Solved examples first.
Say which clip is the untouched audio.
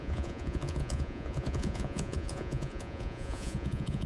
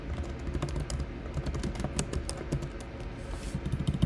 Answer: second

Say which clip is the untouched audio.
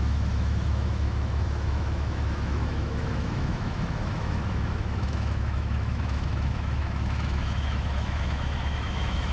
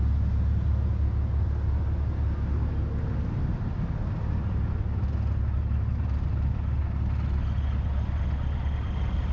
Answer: second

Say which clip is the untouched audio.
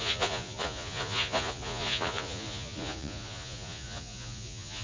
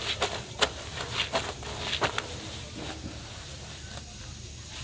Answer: second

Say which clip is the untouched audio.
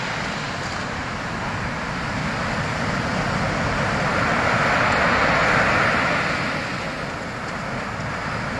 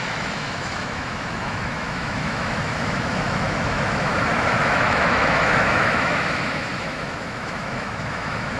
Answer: first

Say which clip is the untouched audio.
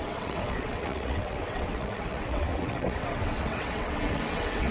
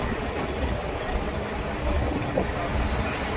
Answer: second